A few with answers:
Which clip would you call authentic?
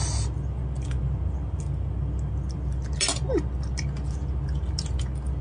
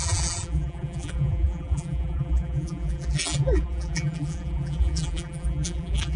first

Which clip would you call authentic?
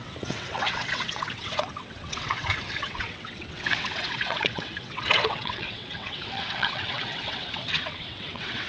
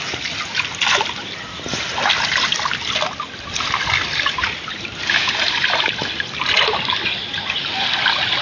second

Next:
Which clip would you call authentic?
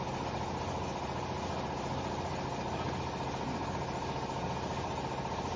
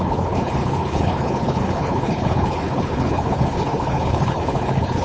first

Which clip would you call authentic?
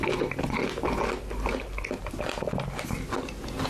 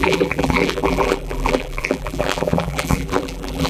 first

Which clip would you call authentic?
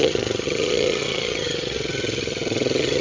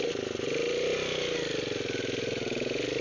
second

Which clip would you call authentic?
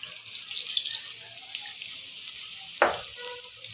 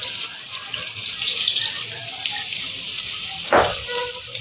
first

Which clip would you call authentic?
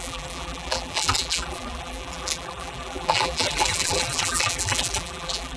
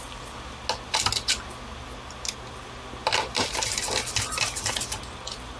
second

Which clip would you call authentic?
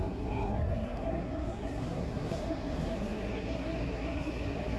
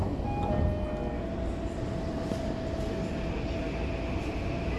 second